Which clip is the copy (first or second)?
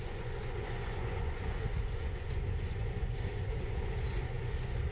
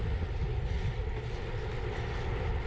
first